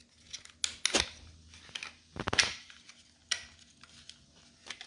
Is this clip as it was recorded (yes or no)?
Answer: yes